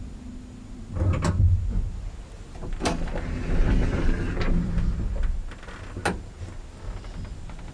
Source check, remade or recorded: recorded